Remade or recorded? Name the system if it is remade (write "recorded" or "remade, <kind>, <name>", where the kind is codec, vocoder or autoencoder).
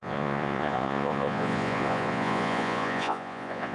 remade, vocoder, Vocos